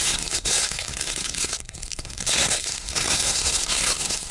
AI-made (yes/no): yes